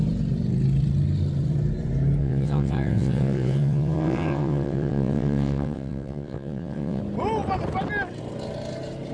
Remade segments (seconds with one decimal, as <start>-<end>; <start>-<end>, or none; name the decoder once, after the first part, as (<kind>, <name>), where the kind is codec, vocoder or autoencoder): 2.2-7.0 (vocoder, WaveNeXt)